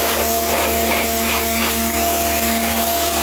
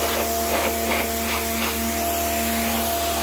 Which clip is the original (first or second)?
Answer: second